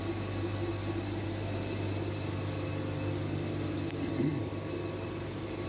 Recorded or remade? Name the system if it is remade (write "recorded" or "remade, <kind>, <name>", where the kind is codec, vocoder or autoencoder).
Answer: recorded